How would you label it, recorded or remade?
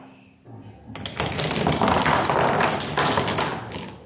recorded